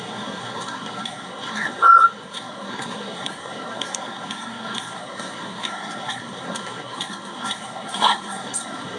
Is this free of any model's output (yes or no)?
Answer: no